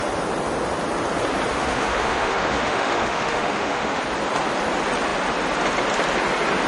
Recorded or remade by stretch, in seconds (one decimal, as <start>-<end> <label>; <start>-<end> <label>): 0.0-1.5 recorded; 1.5-4.0 remade; 4.0-6.7 recorded